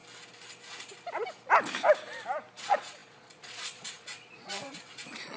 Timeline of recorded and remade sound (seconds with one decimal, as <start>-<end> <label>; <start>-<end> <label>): 0.0-2.6 recorded; 2.6-5.4 remade